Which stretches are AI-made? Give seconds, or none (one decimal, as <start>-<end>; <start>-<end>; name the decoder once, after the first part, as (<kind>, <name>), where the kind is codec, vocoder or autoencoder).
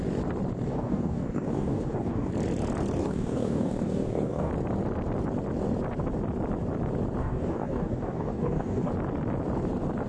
0.7-2.3 (codec, DAC); 3.0-4.5; 7.2-8.9